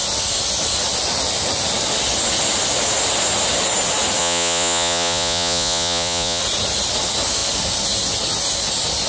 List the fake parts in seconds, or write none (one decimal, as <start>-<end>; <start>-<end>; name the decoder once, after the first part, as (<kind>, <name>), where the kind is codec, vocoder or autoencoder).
4.2-6.4 (vocoder, Vocos)